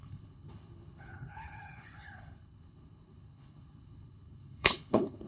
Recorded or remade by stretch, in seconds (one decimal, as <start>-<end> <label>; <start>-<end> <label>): 0.0-5.3 remade